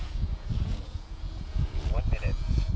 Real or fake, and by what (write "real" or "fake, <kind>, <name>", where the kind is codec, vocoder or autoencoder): fake, vocoder, Vocos